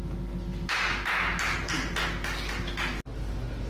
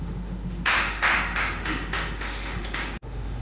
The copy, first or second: second